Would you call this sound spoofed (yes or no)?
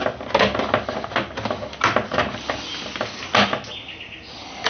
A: no